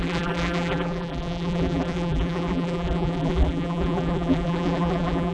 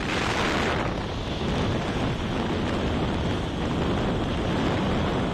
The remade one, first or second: first